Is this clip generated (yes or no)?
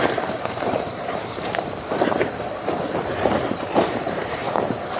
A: yes